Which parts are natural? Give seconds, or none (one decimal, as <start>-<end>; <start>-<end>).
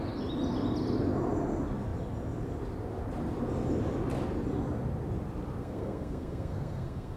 0.0-5.6